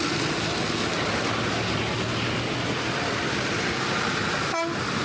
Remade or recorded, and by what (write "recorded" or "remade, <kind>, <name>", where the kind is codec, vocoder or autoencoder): recorded